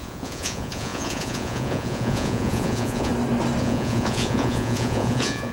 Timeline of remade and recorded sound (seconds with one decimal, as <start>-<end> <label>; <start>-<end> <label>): 0.0-3.1 remade; 3.1-3.6 recorded; 3.6-5.5 remade